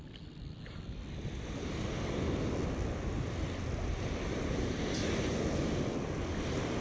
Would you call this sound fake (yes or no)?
no